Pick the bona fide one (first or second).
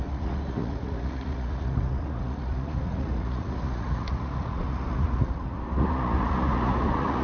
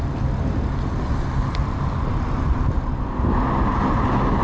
second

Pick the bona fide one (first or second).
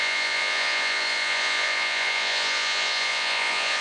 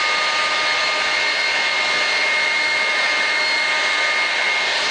second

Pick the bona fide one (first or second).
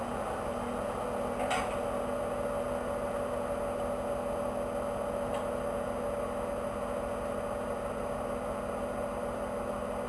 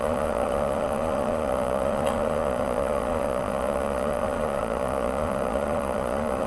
first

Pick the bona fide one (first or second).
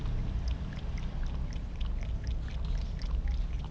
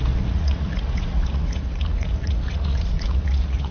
first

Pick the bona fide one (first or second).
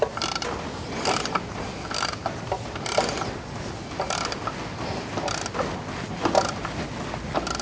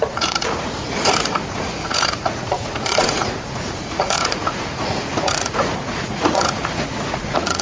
first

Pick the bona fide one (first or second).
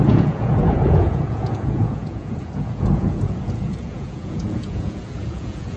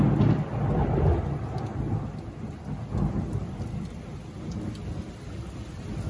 second